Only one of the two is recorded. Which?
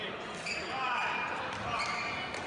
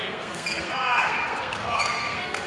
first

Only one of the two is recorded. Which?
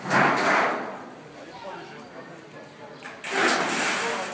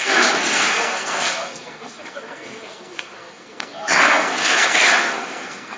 first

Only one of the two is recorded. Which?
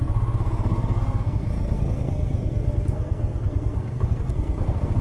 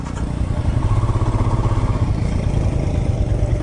second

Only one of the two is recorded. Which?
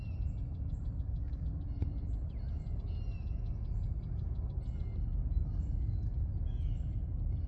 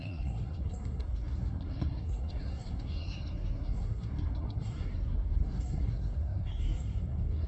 first